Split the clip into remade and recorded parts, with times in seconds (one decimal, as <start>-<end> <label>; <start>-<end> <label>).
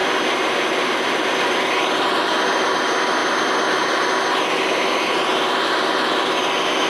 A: 0.0-6.9 recorded